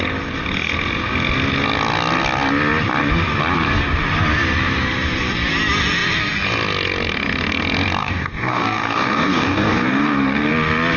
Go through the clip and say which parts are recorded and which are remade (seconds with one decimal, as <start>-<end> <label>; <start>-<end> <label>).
0.0-8.0 recorded; 8.0-10.5 remade; 10.5-11.0 recorded